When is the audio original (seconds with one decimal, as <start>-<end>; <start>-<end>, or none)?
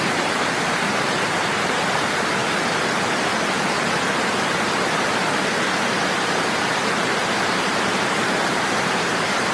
2.4-6.5